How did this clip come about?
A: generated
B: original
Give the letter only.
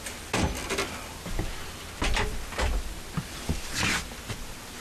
B